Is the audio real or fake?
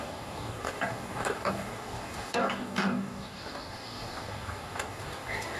fake